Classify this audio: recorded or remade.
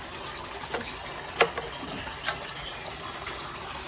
recorded